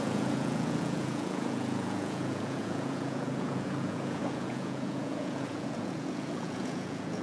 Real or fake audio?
fake